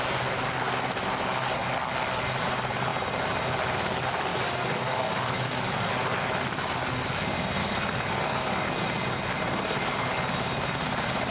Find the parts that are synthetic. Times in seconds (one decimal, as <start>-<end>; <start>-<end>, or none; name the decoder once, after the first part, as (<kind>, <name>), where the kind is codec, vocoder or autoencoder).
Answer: 4.3-5.9 (codec, DAC); 7.6-8.7